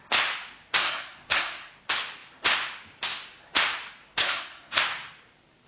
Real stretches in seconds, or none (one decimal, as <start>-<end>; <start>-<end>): 0.0-0.8; 1.7-4.2; 4.8-5.7

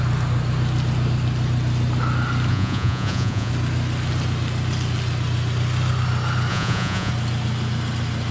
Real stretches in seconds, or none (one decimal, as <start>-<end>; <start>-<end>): 0.0-2.5; 3.5-6.5; 7.1-8.3